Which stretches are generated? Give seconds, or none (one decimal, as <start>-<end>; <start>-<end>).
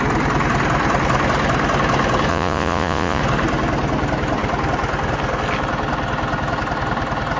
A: 2.3-3.2